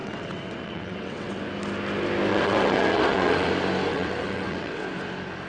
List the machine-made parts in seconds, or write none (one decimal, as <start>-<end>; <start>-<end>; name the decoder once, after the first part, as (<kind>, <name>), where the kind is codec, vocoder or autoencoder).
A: 0.0-1.4 (vocoder, WaveNeXt); 2.3-3.5; 3.9-4.8